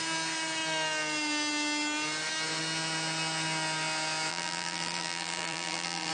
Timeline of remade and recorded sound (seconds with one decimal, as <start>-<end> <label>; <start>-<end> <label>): 0.0-4.3 recorded; 4.3-6.1 remade